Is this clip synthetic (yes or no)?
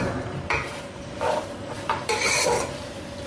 yes